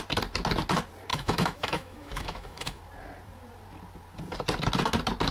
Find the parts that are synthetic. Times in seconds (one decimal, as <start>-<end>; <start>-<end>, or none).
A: 1.1-2.8